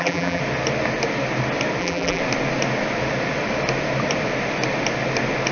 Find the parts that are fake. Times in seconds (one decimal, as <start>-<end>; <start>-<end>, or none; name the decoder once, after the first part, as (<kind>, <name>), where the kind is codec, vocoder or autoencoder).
0.0-0.4 (vocoder, BigVGAN v2); 1.8-2.2